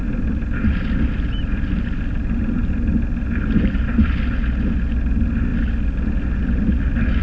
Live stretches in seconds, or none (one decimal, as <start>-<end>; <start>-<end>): 0.0-7.2